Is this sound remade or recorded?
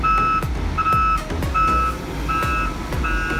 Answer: recorded